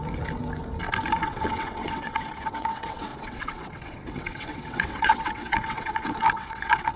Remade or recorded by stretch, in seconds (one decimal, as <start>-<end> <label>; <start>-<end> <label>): 0.0-1.2 recorded; 1.2-7.0 remade